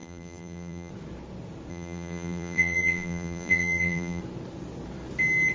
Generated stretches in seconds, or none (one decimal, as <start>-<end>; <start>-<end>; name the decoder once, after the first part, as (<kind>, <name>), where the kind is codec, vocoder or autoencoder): 0.0-0.9 (vocoder, BigVGAN v2); 1.7-4.2